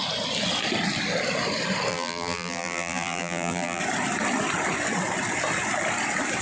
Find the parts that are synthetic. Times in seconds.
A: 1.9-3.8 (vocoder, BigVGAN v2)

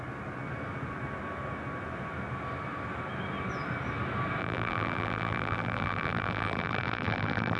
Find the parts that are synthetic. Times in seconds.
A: 4.4-7.6 (vocoder, BigVGAN v2)

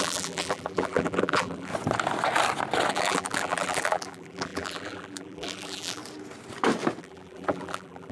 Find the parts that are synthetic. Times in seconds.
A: 0.0-1.7 (vocoder, BigVGAN v2); 2.9-6.0; 7.0-8.1